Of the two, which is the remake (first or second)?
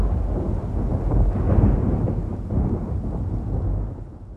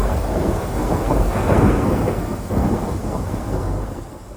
second